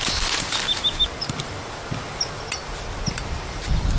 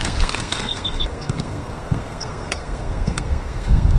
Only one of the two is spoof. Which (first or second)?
second